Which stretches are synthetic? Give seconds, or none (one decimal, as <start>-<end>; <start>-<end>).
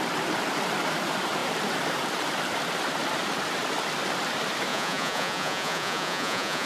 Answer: 4.7-6.7